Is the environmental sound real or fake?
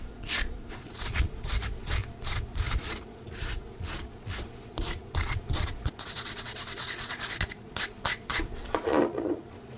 fake